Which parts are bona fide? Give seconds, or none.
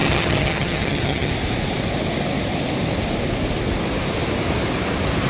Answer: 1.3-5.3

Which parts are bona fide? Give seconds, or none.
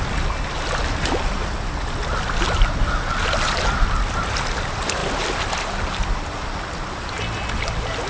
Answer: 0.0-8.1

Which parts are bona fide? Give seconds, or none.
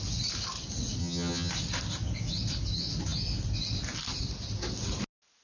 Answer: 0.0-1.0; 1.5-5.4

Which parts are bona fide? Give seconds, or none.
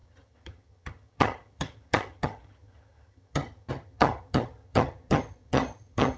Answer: none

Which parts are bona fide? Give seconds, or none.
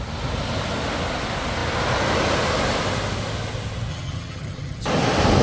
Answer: 0.0-3.9; 4.8-5.4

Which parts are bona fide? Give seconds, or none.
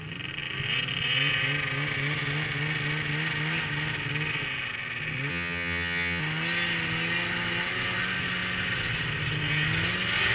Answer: 0.0-5.3; 6.2-10.3